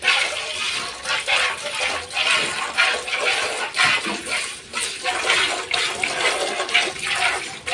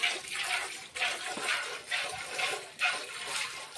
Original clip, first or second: first